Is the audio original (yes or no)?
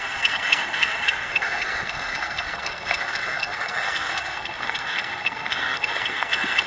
no